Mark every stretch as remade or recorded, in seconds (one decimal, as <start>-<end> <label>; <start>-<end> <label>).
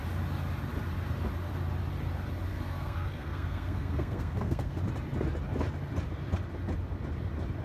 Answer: 0.0-2.5 recorded; 2.5-4.8 remade; 4.8-7.6 recorded